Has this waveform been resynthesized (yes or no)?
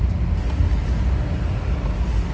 no